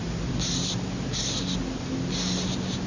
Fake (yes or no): no